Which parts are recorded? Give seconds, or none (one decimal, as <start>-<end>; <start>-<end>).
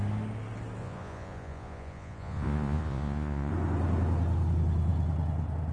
0.0-0.8; 3.5-5.7